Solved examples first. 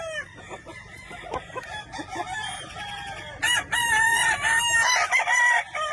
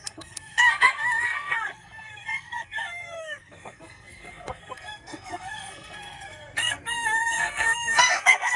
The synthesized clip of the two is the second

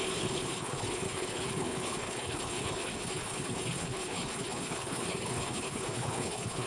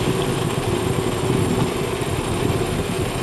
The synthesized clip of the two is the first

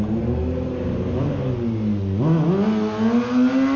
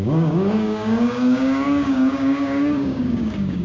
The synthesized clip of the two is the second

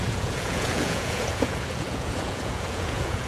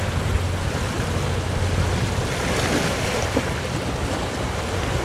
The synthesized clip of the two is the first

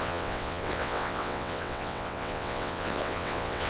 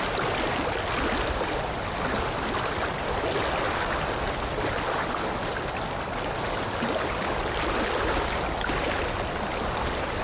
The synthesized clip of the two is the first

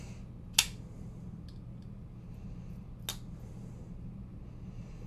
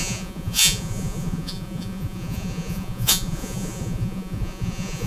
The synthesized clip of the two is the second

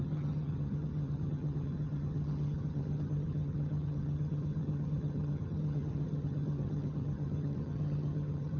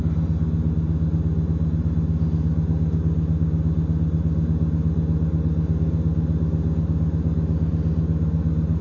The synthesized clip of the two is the first